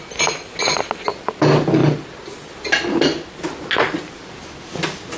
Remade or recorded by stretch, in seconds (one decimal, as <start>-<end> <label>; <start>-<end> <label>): 0.0-5.2 recorded